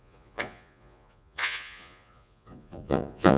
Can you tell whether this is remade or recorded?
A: remade